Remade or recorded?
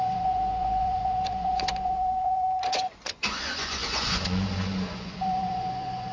remade